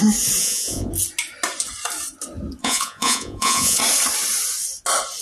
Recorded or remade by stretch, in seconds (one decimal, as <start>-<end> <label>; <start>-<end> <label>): 0.0-0.4 recorded; 0.4-0.9 remade; 0.9-2.6 recorded; 2.6-3.8 remade; 3.8-5.2 recorded